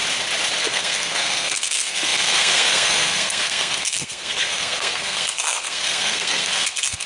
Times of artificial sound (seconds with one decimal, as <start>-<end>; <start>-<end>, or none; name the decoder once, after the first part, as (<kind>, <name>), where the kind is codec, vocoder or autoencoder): 0.6-7.1 (codec, SNAC)

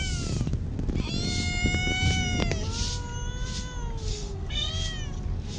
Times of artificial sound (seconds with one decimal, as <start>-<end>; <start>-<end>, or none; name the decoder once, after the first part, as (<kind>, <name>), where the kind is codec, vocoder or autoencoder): 4.1-4.7 (codec, SNAC)

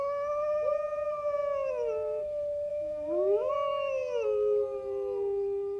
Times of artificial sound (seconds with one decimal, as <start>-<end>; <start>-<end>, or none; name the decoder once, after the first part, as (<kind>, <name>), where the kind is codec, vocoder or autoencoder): 2.7-3.5 (autoencoder, DAC-VAE)

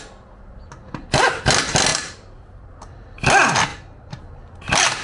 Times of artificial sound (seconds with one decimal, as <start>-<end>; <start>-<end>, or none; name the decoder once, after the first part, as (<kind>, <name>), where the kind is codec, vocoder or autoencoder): 1.9-2.7 (vocoder, BigVGAN v2); 3.7-4.2

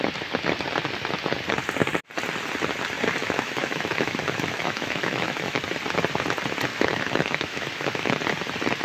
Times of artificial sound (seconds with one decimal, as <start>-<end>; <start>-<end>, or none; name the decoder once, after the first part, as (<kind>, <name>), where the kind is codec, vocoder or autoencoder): 3.2-5.6 (autoencoder, DAC-VAE); 6.7-8.2